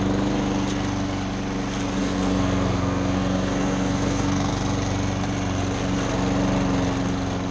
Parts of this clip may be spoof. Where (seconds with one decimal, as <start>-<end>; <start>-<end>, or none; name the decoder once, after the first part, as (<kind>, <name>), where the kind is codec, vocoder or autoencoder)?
2.0-4.5 (codec, SNAC)